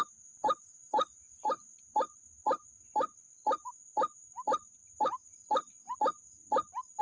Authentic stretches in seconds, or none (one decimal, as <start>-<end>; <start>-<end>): 0.0-7.0